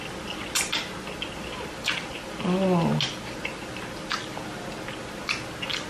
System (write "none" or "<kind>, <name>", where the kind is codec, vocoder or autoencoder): none